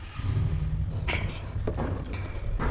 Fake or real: real